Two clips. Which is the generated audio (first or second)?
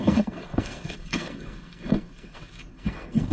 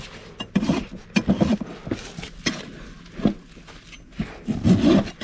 first